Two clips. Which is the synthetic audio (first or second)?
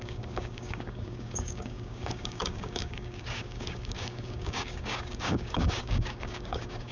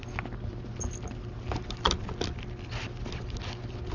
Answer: first